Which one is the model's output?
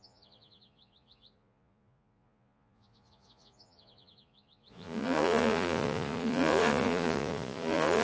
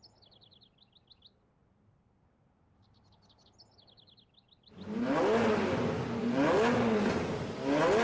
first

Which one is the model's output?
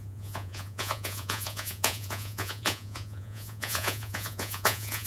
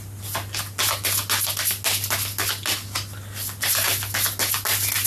first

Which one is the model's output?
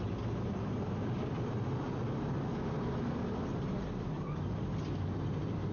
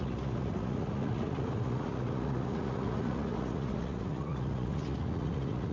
second